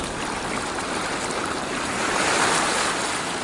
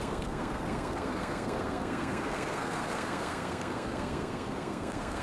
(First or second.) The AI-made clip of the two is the second